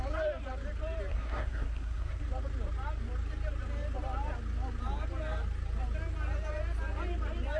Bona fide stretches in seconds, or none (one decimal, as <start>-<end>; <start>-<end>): 0.0-1.1; 2.2-7.6